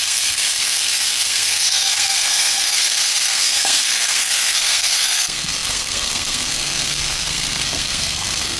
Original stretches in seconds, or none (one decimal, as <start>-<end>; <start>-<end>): none